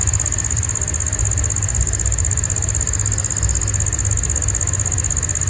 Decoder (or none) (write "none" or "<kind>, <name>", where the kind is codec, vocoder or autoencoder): none